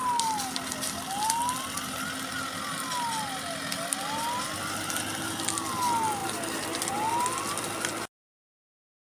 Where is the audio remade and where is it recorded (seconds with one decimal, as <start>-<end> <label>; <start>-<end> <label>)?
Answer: 0.0-6.2 recorded; 6.2-7.1 remade; 7.1-9.1 recorded